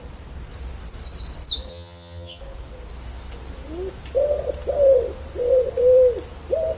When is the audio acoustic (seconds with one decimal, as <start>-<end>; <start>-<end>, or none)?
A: 0.0-1.7; 2.4-6.8